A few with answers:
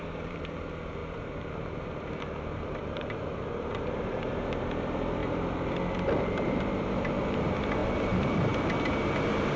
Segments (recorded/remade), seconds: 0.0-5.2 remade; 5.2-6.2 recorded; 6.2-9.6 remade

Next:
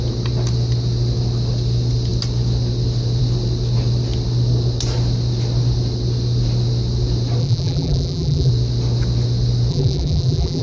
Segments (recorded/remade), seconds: 0.0-7.4 recorded; 7.4-8.5 remade; 8.5-9.7 recorded; 9.7-10.6 remade